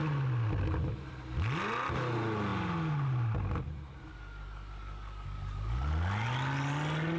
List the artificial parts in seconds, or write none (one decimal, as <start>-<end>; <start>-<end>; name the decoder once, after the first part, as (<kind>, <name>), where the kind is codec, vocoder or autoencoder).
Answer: 4.1-5.8 (codec, DAC)